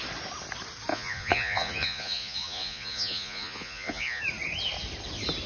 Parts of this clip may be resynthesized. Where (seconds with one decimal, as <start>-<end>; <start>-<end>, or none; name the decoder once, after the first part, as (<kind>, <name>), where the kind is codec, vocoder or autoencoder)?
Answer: 0.9-4.2 (vocoder, Vocos)